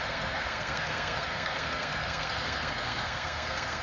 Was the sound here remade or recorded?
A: remade